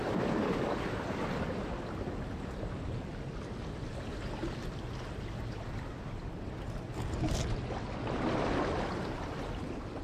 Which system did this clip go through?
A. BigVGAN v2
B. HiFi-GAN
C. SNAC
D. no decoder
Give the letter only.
D